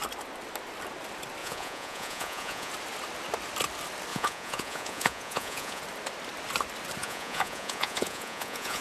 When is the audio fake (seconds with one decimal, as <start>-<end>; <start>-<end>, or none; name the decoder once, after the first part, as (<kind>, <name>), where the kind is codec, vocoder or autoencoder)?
1.4-2.7 (vocoder, Vocos); 4.1-5.8; 7.0-8.8